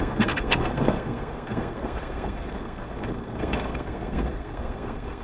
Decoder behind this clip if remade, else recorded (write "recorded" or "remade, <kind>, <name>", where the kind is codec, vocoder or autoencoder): remade, codec, SNAC